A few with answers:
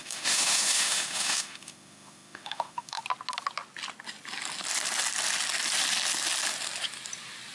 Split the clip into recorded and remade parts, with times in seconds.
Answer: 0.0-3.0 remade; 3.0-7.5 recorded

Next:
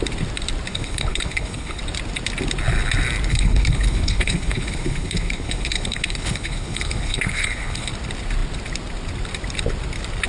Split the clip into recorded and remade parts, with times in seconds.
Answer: 0.0-0.7 recorded; 0.7-1.8 remade; 1.8-3.3 recorded; 3.3-7.9 remade; 7.9-10.3 recorded

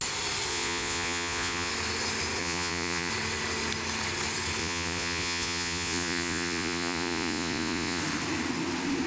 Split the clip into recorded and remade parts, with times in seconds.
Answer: 0.0-0.5 recorded; 0.5-1.7 remade; 1.7-2.4 recorded; 2.4-3.1 remade; 3.1-4.6 recorded; 4.6-8.0 remade; 8.0-9.1 recorded

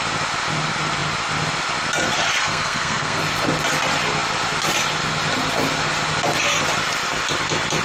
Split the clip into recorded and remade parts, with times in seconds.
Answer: 0.0-2.4 recorded; 2.4-3.2 remade; 3.2-7.8 recorded